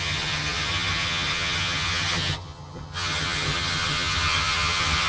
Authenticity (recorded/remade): remade